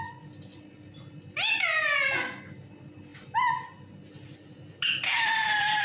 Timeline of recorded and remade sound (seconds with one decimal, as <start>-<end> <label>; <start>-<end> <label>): 0.0-5.8 recorded